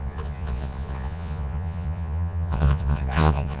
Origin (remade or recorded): remade